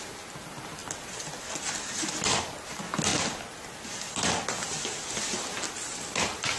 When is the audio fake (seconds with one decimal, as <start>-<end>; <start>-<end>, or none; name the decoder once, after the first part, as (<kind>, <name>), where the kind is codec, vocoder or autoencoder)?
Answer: none